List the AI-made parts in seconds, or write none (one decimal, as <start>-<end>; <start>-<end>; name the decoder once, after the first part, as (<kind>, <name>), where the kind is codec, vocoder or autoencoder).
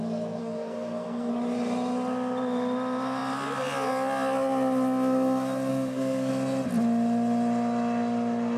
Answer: 0.4-1.3 (codec, SNAC); 5.7-6.3